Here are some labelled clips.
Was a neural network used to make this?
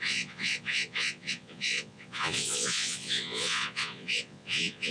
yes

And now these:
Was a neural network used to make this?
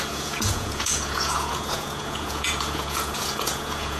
yes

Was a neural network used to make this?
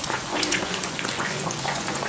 yes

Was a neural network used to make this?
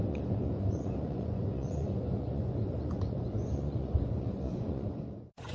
yes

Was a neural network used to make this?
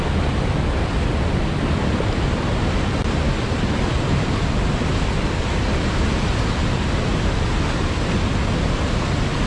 no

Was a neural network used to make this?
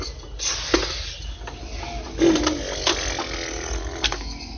no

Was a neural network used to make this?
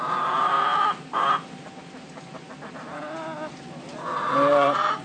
no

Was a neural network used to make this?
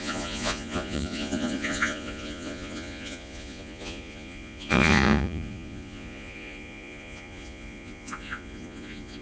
yes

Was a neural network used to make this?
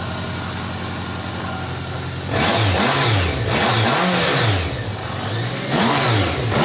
no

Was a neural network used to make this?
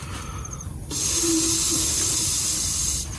no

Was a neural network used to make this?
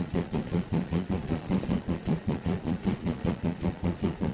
yes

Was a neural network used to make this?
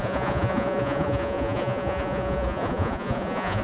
yes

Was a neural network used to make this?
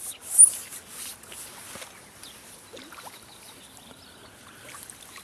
no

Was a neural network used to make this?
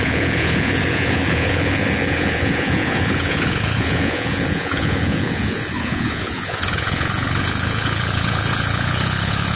yes